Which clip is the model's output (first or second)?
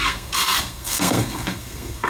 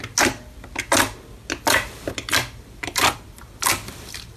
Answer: first